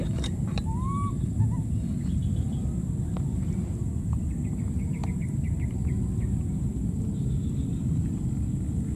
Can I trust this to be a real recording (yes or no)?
yes